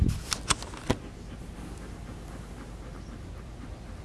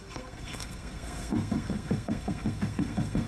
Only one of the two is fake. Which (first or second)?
second